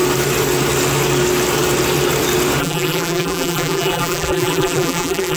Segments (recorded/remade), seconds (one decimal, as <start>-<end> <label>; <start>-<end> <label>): 0.0-2.6 recorded; 2.6-5.4 remade